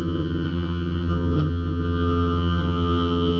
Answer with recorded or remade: remade